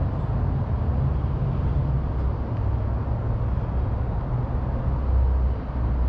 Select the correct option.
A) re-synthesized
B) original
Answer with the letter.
B